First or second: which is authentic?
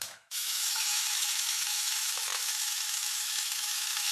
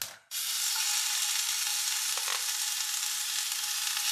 second